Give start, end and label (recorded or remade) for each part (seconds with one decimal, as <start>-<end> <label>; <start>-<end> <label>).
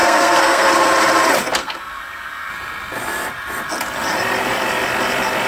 0.0-0.7 remade; 0.7-1.6 recorded; 1.6-2.5 remade; 2.5-5.5 recorded